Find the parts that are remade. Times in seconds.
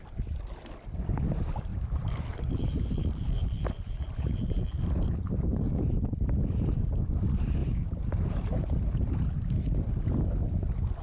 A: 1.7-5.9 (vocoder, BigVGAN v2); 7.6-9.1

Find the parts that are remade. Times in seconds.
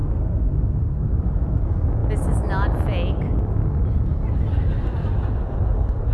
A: 0.0-0.8 (codec, SNAC)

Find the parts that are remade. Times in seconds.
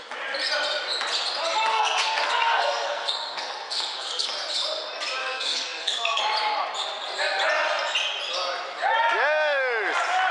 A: 1.7-4.3 (codec, SNAC); 5.2-6.2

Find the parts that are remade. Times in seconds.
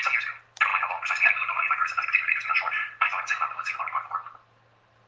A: 0.7-3.8 (vocoder, BigVGAN v2)